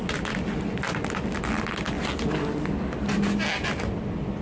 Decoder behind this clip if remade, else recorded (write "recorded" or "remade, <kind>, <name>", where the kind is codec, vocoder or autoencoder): recorded